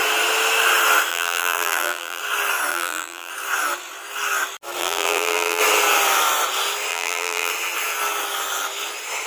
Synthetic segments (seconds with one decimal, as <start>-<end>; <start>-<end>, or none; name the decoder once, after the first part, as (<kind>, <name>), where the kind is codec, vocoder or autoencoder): 1.1-2.2 (vocoder, BigVGAN v2); 2.7-3.3; 4.8-5.6; 6.9-7.5